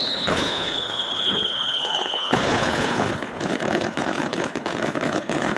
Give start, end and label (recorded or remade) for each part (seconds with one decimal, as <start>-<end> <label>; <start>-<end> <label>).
0.0-5.6 remade